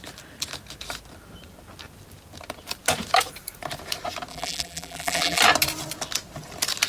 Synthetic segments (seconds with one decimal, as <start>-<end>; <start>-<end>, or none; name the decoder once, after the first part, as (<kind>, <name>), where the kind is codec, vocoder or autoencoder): 4.3-5.4 (vocoder, BigVGAN v2)